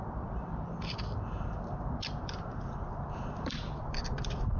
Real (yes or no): no